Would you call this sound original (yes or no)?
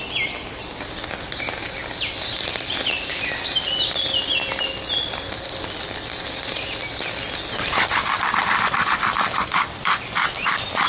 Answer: yes